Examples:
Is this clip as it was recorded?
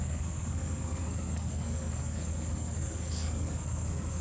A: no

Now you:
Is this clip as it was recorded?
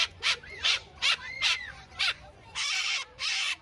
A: no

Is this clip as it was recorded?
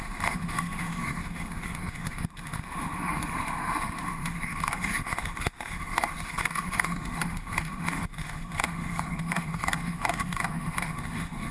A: no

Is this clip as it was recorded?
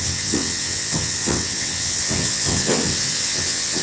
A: no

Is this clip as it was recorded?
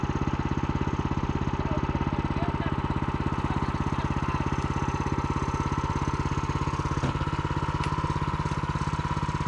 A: yes